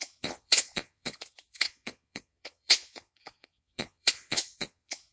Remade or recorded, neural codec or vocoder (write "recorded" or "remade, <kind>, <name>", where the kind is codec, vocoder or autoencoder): remade, vocoder, Vocos